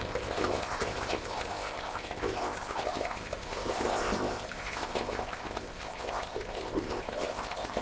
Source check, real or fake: fake